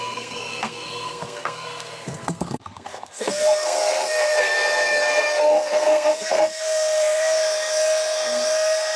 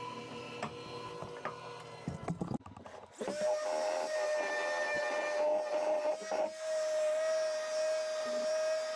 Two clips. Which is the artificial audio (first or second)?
first